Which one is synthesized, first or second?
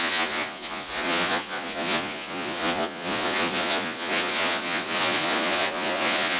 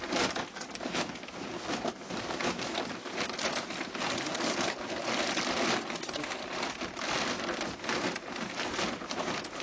first